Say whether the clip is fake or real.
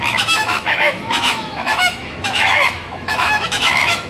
fake